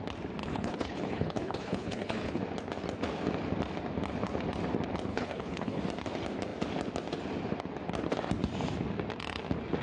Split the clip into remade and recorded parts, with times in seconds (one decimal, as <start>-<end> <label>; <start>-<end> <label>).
0.0-0.4 recorded; 0.4-2.4 remade; 2.4-5.1 recorded; 5.1-5.8 remade; 5.8-9.8 recorded

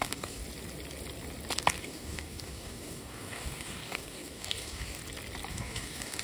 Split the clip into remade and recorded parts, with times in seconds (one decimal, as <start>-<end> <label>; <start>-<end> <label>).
0.0-0.4 remade; 0.4-1.8 recorded; 1.8-5.0 remade; 5.0-5.5 recorded; 5.5-6.2 remade

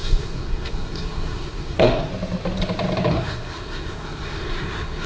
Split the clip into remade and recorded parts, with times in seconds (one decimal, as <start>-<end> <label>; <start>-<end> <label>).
0.0-2.1 remade; 2.1-3.1 recorded; 3.1-5.1 remade

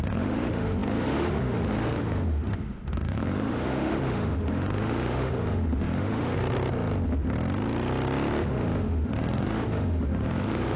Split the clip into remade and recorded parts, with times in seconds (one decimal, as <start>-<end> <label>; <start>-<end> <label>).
0.0-6.4 remade; 6.4-8.5 recorded; 8.5-10.8 remade

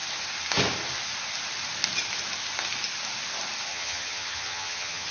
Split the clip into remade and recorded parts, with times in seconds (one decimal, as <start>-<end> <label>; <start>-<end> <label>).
0.0-3.7 recorded; 3.7-5.1 remade

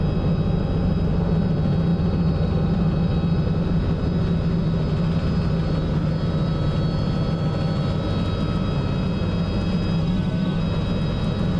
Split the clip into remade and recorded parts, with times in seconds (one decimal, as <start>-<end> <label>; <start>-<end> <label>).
0.0-10.0 recorded; 10.0-10.6 remade; 10.6-11.6 recorded

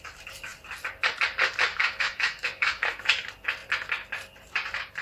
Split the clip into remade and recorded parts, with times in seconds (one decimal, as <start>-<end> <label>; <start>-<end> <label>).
0.0-1.7 recorded; 1.7-3.1 remade; 3.1-5.0 recorded

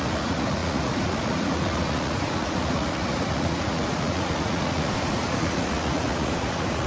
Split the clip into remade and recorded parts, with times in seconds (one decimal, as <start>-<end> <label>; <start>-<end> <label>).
0.0-6.9 remade